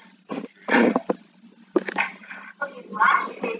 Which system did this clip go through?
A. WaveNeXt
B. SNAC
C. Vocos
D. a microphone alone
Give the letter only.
D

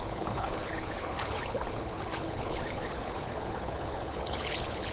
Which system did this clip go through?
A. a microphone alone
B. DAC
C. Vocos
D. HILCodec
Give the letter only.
D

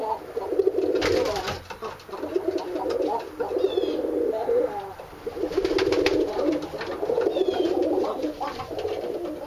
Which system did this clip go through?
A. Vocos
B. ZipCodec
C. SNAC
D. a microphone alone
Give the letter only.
D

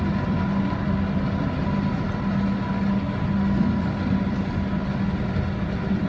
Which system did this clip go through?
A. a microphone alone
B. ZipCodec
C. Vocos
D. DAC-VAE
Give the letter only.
A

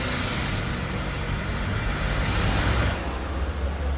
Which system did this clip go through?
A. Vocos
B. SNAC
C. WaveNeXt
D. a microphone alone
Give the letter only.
D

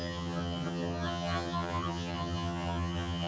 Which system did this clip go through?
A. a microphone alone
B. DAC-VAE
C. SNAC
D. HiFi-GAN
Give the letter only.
D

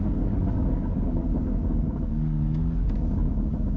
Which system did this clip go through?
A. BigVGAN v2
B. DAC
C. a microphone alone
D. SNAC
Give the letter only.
B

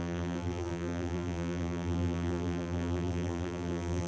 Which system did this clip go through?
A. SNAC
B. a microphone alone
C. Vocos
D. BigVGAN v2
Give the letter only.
D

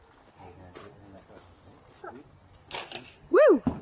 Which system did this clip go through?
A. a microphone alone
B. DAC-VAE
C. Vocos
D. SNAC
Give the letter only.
A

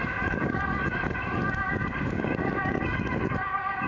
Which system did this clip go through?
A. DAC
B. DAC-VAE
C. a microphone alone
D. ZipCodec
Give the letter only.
A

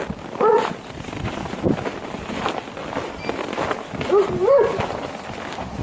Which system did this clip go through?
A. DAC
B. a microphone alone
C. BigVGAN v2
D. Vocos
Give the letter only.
B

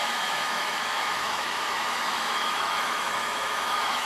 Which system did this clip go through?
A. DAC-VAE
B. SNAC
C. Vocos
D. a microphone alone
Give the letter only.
A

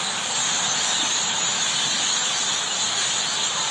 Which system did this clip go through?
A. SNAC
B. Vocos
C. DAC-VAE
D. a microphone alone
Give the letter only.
D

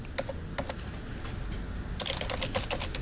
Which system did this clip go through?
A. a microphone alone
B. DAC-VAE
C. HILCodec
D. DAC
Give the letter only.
A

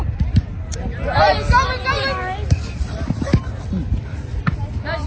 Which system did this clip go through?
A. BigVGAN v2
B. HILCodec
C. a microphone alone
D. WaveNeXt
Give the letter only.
C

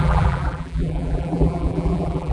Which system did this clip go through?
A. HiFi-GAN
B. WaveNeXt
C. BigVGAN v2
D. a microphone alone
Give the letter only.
C